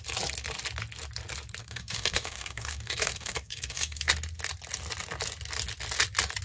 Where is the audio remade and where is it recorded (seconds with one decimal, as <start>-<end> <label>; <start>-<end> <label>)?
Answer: 0.0-1.6 recorded; 1.6-4.1 remade; 4.1-6.4 recorded